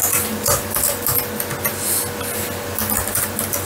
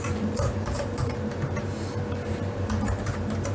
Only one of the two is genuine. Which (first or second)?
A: first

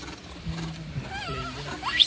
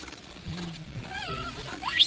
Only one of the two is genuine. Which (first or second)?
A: first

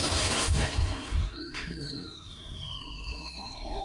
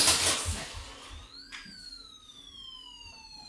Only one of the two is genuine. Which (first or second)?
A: second